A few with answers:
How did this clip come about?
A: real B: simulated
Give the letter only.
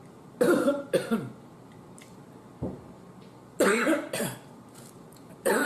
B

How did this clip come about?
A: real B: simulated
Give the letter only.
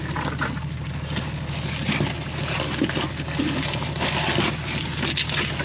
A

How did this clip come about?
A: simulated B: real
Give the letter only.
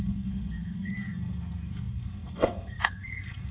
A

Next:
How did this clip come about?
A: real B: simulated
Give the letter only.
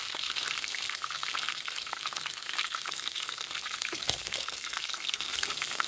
B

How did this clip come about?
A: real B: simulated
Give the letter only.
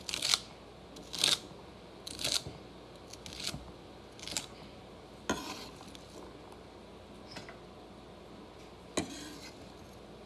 A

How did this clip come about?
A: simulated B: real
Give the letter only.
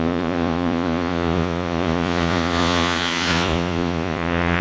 A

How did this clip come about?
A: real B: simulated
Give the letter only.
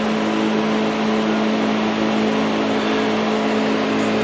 A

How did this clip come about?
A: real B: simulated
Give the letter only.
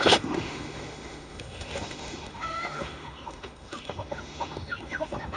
B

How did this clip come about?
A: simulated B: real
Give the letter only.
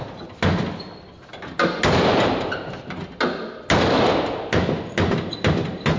B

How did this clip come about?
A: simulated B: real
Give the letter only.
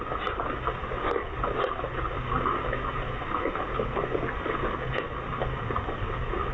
B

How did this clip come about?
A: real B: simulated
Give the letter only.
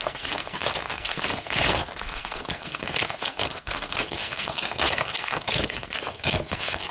B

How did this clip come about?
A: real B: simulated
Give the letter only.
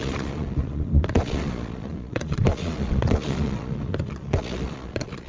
B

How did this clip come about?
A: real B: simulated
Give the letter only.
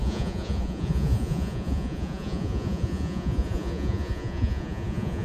B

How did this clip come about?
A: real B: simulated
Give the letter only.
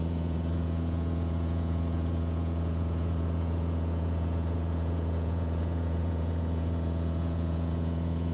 B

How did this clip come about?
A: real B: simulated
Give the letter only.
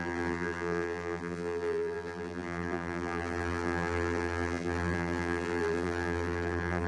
B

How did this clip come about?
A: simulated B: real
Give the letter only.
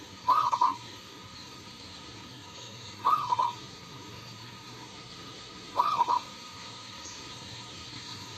A